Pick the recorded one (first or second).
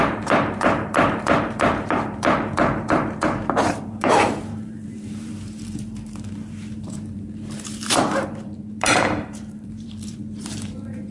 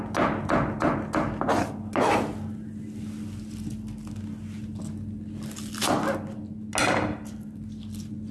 second